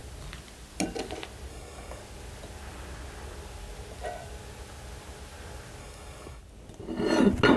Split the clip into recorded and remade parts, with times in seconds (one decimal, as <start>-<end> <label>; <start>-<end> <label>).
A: 0.0-1.5 recorded; 1.5-2.0 remade; 2.0-5.8 recorded; 5.8-6.4 remade; 6.4-7.6 recorded